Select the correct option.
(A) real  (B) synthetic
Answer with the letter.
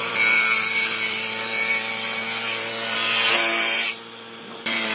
B